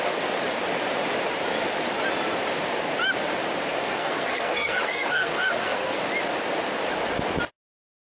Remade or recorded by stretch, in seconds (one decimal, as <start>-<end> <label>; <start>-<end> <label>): 0.0-3.7 recorded; 3.7-6.0 remade; 6.0-8.2 recorded